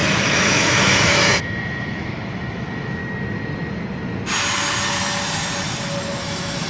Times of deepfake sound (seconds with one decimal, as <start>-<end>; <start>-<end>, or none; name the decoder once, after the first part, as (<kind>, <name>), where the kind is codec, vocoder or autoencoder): 0.0-3.0 (autoencoder, DAC-VAE); 6.2-6.7